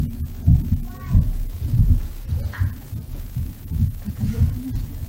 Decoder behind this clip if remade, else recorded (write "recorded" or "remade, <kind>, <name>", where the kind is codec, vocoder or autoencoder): remade, vocoder, Vocos